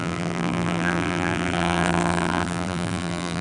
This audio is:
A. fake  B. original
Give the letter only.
A